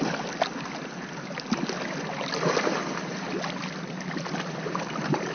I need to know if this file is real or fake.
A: real